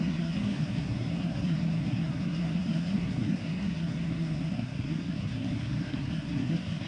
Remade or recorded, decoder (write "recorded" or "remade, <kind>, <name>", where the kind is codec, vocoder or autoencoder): remade, codec, SNAC